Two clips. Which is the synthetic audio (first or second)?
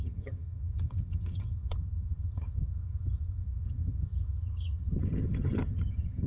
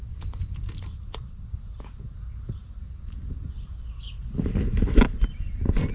first